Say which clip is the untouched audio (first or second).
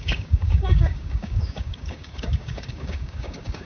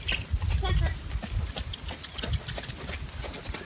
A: second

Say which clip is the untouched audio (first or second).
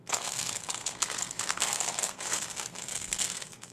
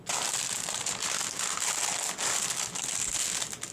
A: second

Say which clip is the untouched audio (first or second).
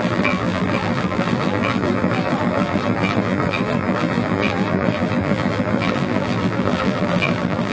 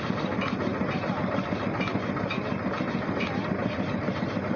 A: second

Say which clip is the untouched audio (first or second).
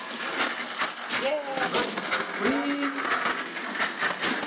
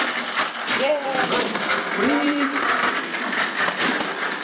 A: first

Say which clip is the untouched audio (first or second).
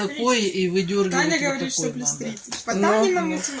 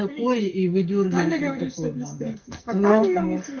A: first